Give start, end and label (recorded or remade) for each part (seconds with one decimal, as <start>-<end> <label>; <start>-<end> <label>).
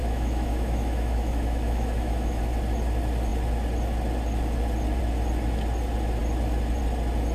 0.0-2.4 remade; 2.4-7.3 recorded